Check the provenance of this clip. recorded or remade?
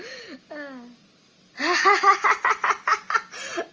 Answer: recorded